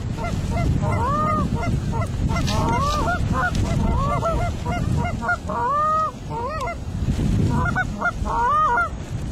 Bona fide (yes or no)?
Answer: yes